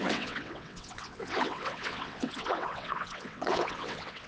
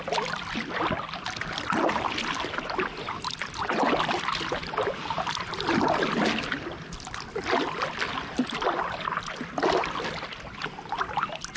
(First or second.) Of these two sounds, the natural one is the second